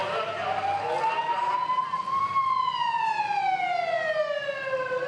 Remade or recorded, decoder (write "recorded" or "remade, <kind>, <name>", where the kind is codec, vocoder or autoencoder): recorded